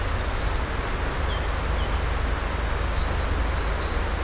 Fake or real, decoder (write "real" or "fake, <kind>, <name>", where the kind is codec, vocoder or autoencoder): real